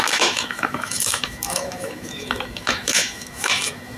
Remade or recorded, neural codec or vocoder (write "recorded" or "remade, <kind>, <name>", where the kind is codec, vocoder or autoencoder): remade, autoencoder, DAC-VAE